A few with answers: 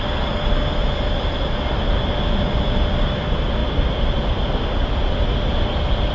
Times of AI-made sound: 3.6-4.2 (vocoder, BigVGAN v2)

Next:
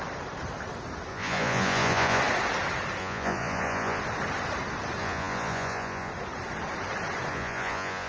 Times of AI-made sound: 1.1-2.2 (vocoder, Vocos); 3.0-4.0; 5.0-6.1; 7.3-8.1

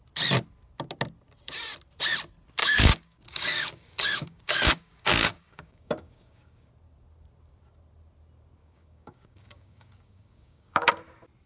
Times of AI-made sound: 2.6-6.7 (codec, DAC); 8.6-10.9

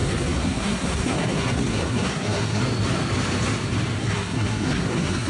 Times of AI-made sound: 0.0-2.6 (codec, SNAC); 4.0-5.3